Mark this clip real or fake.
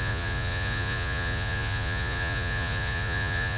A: fake